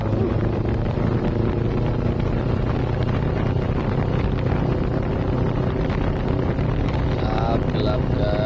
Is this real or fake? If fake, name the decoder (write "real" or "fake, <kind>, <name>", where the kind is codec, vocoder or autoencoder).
real